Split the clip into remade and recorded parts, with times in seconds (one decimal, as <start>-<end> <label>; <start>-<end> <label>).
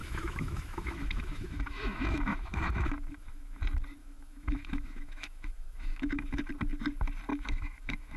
0.0-3.6 remade; 3.6-4.0 recorded; 4.0-6.5 remade; 6.5-7.3 recorded; 7.3-8.2 remade